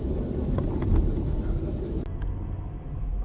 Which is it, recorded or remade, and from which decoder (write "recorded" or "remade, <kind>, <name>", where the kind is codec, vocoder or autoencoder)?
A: recorded